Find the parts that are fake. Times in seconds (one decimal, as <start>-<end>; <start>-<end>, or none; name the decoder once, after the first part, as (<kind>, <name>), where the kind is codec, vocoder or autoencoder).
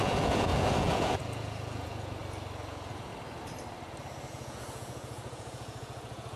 0.0-2.2 (vocoder, Vocos); 2.7-3.1; 4.3-6.4